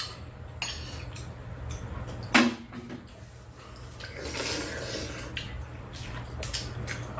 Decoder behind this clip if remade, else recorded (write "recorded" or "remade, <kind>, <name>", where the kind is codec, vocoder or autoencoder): recorded